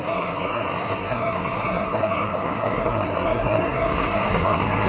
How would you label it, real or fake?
fake